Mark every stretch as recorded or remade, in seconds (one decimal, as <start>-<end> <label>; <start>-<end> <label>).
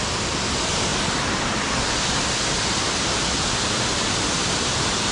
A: 0.0-5.1 recorded